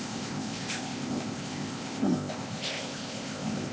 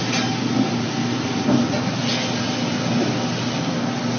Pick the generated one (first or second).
first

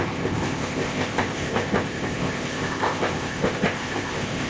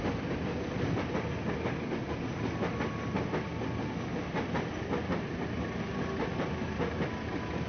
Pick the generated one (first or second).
first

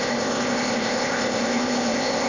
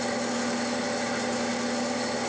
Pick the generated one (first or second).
first